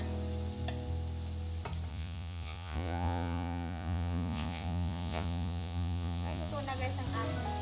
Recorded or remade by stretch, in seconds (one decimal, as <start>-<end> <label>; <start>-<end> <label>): 0.0-1.9 recorded; 1.9-6.5 remade; 6.5-7.6 recorded